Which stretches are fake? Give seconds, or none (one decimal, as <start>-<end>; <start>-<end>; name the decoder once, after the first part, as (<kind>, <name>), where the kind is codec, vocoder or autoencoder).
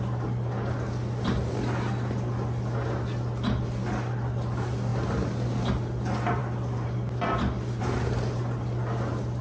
none